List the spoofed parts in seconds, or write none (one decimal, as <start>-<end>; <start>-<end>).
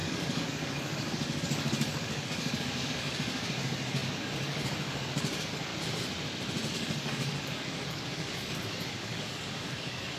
0.0-5.7; 6.7-10.2